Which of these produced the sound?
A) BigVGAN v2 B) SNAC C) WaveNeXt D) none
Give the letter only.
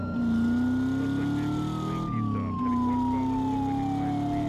D